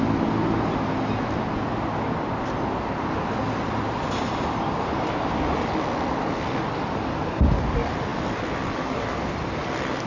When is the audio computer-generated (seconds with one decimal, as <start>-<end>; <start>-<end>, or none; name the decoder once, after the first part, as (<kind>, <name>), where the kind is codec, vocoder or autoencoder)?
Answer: none